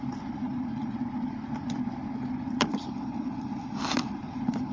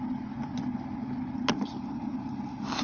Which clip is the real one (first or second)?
second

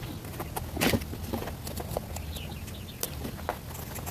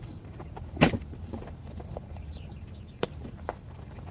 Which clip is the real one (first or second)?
first